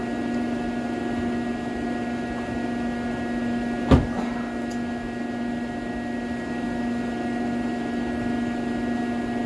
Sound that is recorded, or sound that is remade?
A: recorded